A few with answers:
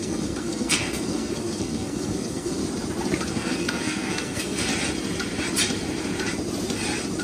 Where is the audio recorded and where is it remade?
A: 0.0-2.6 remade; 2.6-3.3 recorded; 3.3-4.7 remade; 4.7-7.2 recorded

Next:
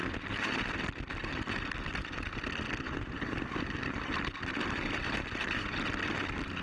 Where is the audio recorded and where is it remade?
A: 0.0-6.6 recorded

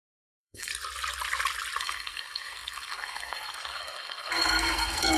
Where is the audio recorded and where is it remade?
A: 0.0-0.7 remade; 0.7-1.8 recorded; 1.8-5.2 remade

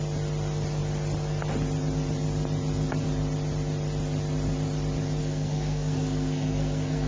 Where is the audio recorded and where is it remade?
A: 0.0-5.2 recorded; 5.2-7.1 remade

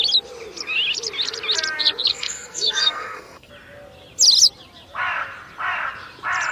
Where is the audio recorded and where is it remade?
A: 0.0-2.1 recorded; 2.1-3.5 remade; 3.5-6.5 recorded

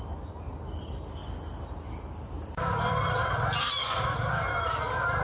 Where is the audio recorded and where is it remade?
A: 0.0-5.2 recorded